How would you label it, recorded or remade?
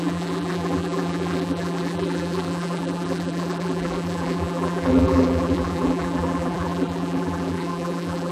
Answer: remade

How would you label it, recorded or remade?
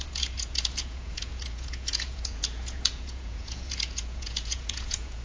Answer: remade